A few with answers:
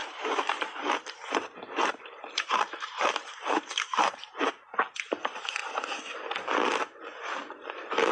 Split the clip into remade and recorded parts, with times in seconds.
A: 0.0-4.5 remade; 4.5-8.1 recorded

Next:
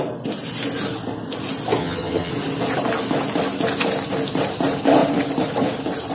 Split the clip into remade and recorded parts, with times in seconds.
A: 0.0-1.8 recorded; 1.8-2.3 remade; 2.3-6.1 recorded

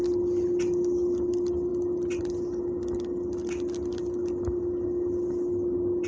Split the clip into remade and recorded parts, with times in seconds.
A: 0.0-6.1 recorded